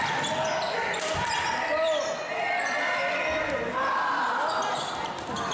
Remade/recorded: recorded